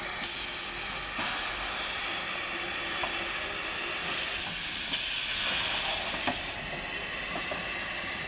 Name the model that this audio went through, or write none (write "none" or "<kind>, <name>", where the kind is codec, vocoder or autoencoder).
none